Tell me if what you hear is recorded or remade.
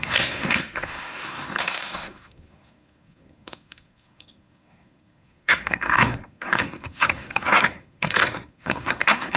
remade